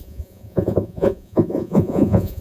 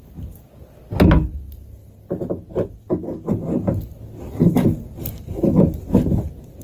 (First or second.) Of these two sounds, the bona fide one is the second